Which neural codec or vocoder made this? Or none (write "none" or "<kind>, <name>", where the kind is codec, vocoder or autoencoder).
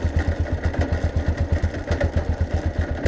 none